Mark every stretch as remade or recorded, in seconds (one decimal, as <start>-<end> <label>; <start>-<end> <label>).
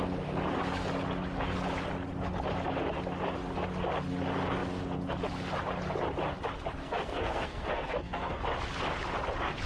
0.0-6.8 recorded; 6.8-8.4 remade; 8.4-9.7 recorded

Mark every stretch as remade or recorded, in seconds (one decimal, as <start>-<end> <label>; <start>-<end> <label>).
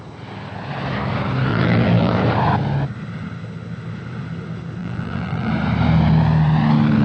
0.0-1.5 recorded; 1.5-2.2 remade; 2.2-4.8 recorded; 4.8-5.5 remade; 5.5-7.0 recorded